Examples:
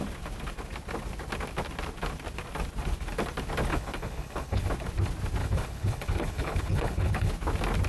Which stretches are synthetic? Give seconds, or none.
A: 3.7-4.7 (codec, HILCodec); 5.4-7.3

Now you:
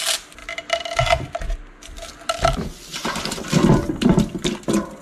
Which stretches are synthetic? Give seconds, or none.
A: none

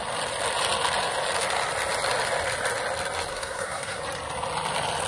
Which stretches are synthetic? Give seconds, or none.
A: 3.3-4.0 (codec, SNAC)

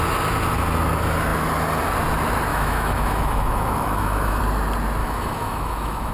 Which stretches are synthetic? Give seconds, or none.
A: 2.5-4.4 (autoencoder, DAC-VAE); 5.0-6.1

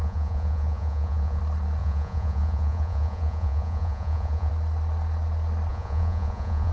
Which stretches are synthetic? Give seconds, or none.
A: 0.0-1.4 (vocoder, Vocos); 1.8-4.5; 5.7-6.7